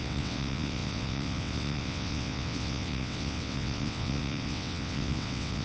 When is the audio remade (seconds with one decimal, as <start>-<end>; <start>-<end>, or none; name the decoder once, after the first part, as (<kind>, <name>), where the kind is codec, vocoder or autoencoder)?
0.0-5.6 (vocoder, WaveNeXt)